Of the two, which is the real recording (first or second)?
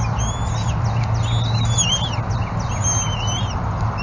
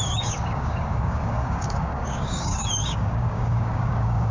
first